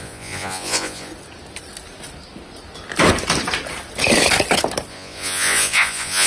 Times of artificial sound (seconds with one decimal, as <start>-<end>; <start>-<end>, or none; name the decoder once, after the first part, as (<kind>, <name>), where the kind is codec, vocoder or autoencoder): 0.0-1.1 (vocoder, Vocos); 4.9-6.3